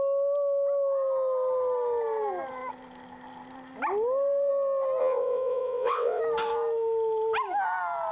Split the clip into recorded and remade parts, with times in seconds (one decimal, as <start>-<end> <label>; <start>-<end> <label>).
0.0-5.0 recorded; 5.0-6.2 remade; 6.2-8.1 recorded